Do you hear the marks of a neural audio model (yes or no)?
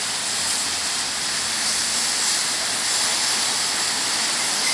no